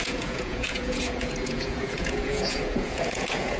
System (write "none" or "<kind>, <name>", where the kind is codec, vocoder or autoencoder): vocoder, Vocos